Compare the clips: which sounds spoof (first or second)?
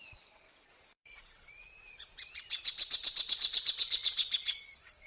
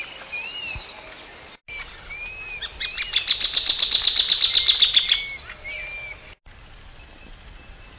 first